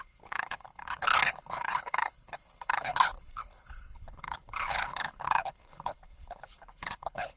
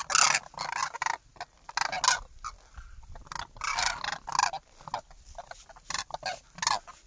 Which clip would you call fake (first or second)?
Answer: first